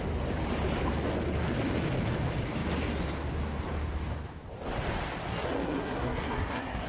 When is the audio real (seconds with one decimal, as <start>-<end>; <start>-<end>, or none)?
0.0-5.3